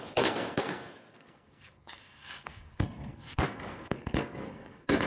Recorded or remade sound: remade